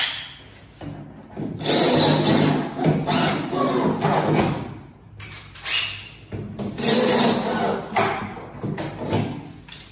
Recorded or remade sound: recorded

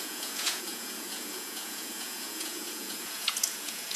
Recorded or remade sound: remade